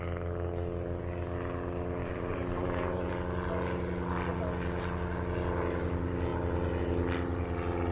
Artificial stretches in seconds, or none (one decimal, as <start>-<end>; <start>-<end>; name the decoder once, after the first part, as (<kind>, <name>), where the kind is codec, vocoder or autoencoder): 2.0-3.1 (vocoder, BigVGAN v2)